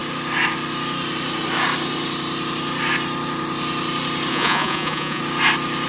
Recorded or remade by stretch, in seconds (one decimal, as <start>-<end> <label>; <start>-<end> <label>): 0.0-4.3 recorded; 4.3-5.2 remade; 5.2-5.9 recorded